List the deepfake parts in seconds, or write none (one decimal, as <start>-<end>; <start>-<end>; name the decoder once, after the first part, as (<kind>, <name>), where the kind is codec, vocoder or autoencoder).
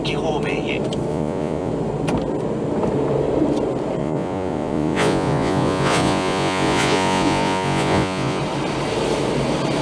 1.1-1.7 (vocoder, Vocos); 4.0-8.4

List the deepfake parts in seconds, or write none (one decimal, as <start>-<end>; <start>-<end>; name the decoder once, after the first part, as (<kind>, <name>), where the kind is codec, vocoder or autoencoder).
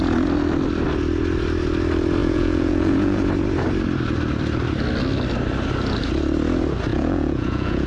2.2-3.2 (vocoder, Vocos); 6.9-7.9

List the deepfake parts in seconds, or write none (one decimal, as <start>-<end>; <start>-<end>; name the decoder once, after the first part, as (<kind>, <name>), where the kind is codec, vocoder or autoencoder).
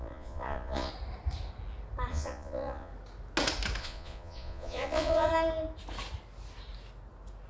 0.0-0.9 (vocoder, Vocos); 2.1-2.9; 3.8-5.3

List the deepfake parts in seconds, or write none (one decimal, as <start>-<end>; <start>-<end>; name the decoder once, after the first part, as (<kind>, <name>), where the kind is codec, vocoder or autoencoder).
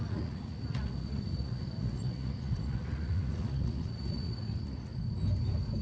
0.0-4.9 (vocoder, Vocos)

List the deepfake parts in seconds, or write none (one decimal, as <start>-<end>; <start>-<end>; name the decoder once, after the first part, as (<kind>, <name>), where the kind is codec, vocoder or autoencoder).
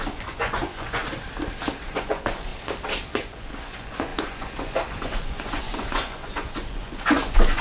0.0-1.1 (vocoder, Vocos); 1.8-2.5; 3.1-7.6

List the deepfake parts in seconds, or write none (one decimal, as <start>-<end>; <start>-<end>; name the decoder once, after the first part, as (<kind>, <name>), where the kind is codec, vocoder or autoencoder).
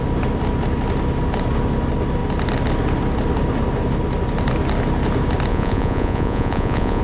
5.5-7.0 (vocoder, Vocos)